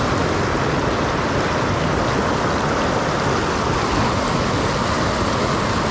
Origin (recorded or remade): recorded